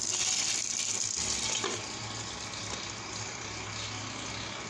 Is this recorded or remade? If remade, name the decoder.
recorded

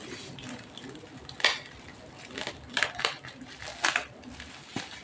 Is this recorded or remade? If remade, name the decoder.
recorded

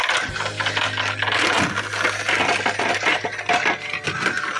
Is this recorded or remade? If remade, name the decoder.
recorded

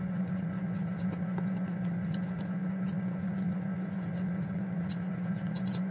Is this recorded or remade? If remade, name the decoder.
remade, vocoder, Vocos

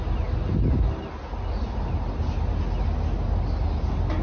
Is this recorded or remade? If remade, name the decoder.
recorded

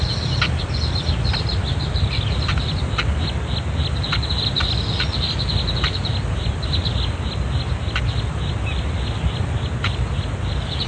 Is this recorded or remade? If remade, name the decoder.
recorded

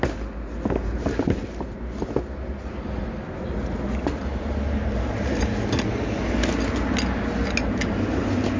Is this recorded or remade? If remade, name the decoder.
recorded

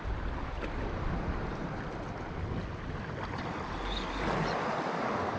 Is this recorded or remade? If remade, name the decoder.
recorded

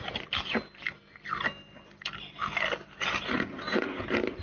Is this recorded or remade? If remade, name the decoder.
recorded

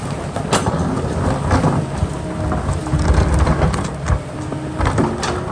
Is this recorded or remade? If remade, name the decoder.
recorded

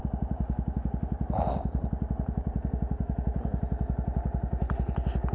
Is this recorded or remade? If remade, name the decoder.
recorded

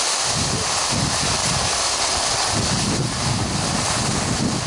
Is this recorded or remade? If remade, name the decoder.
recorded